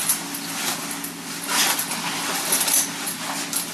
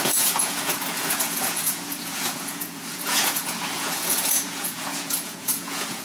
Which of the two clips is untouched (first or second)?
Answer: first